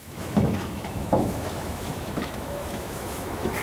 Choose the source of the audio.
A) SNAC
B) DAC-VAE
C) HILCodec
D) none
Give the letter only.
B